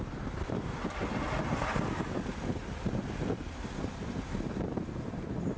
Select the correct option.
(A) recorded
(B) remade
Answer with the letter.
A